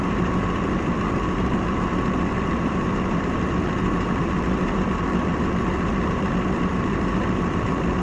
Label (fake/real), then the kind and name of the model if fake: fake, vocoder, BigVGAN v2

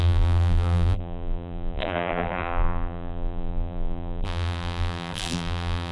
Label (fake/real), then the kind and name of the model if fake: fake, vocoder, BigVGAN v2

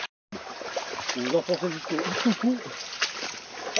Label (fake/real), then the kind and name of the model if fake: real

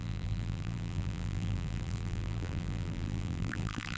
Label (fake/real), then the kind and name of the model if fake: fake, vocoder, BigVGAN v2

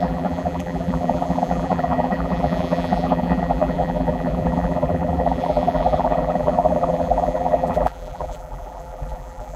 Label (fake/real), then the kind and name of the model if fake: fake, vocoder, BigVGAN v2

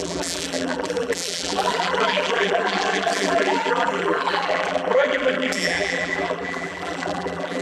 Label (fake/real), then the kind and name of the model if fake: fake, vocoder, BigVGAN v2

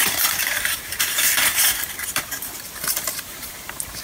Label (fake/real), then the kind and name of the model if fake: fake, vocoder, BigVGAN v2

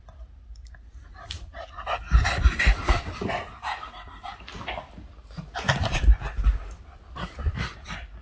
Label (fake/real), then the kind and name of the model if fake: fake, vocoder, BigVGAN v2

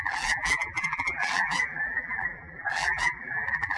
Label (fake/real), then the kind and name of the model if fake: fake, vocoder, BigVGAN v2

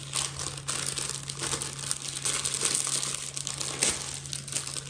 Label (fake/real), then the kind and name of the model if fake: real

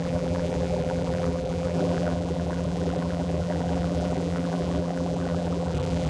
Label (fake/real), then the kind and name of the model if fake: fake, vocoder, BigVGAN v2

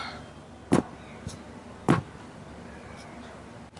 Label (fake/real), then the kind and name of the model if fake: real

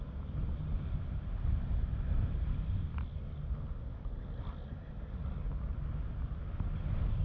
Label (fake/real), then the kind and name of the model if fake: real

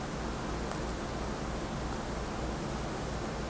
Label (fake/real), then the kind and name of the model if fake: real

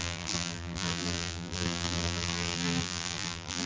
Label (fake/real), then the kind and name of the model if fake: fake, vocoder, BigVGAN v2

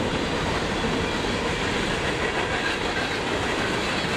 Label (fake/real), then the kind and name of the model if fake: real